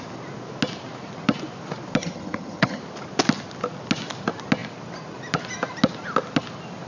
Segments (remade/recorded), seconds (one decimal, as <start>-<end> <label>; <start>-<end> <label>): 0.0-2.0 recorded; 2.0-2.8 remade; 2.8-6.9 recorded